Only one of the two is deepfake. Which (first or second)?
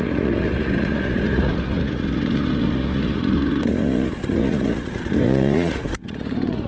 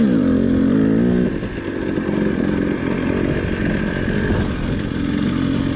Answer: first